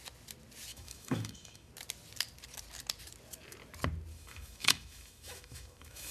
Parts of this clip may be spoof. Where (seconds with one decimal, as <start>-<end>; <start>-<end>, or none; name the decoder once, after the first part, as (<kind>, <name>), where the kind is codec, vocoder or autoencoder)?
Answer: 0.7-1.7 (autoencoder, DAC-VAE); 4.1-6.1